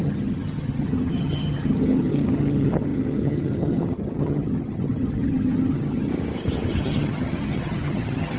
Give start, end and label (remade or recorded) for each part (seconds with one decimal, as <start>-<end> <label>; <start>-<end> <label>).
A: 0.0-6.1 remade; 6.1-6.8 recorded; 6.8-8.4 remade